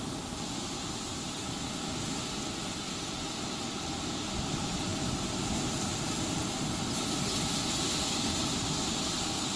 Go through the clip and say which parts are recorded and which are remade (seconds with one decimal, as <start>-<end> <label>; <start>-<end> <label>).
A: 0.0-9.6 remade